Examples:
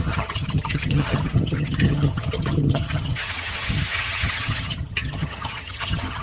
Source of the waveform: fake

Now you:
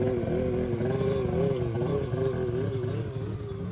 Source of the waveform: real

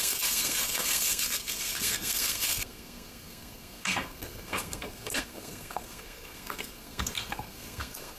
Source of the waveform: fake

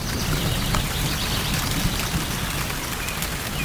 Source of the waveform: real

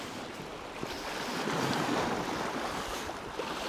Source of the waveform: real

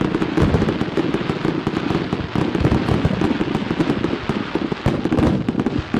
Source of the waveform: real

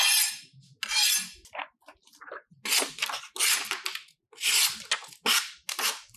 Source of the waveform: real